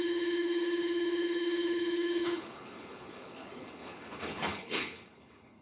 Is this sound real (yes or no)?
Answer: no